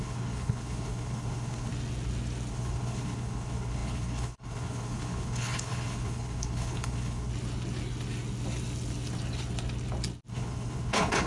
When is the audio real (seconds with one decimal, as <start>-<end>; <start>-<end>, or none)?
1.7-2.5; 7.3-10.3